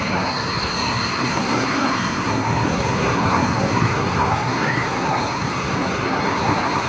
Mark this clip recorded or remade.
remade